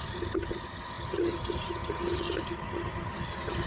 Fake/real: fake